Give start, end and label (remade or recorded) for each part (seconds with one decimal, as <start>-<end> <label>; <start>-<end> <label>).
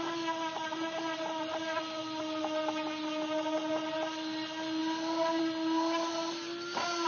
0.0-7.1 recorded